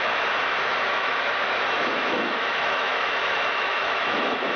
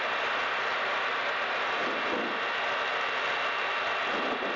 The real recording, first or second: second